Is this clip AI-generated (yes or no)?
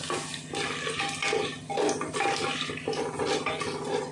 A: no